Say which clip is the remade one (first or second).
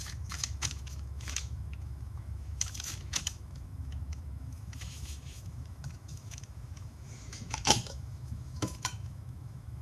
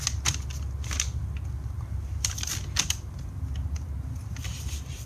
first